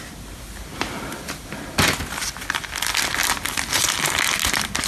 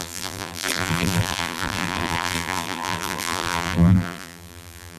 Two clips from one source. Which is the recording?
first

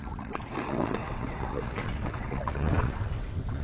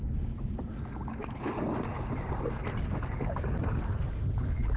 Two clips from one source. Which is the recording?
second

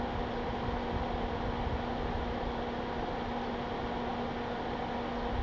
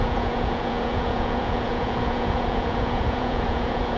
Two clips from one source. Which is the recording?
first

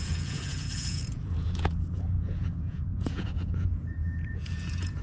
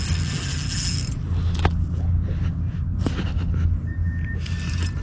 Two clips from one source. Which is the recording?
second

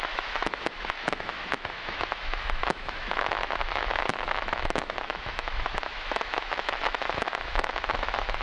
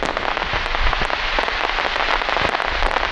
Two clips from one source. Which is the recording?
second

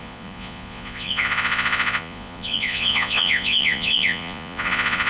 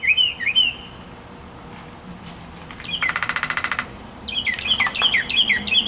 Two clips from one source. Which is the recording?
second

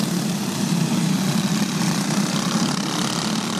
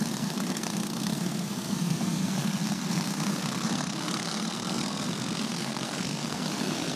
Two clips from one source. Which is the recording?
first